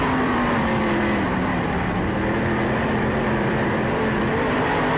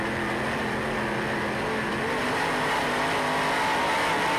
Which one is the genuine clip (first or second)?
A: second